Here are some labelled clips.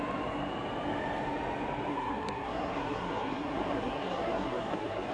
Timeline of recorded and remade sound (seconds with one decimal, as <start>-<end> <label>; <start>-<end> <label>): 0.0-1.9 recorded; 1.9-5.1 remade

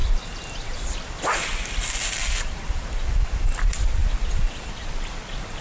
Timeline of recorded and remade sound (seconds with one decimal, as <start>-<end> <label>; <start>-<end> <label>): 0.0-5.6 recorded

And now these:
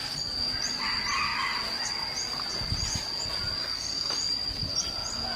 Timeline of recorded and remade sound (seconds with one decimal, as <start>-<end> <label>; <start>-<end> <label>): 0.0-3.6 recorded; 3.6-4.1 remade; 4.1-5.4 recorded

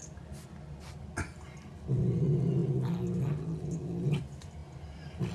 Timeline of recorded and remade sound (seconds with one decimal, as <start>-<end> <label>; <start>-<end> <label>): 0.0-5.3 recorded

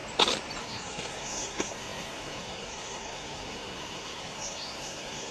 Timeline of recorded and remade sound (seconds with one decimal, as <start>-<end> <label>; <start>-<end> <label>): 0.0-0.6 recorded; 0.6-5.3 remade

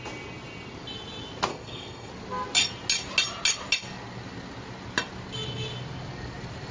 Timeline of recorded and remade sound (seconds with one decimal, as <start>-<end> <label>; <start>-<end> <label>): 0.0-1.5 recorded; 1.5-2.1 remade; 2.1-6.7 recorded

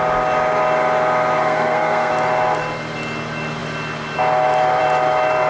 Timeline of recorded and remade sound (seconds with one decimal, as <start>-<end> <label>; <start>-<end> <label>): 0.0-1.4 recorded; 1.4-2.1 remade; 2.1-5.5 recorded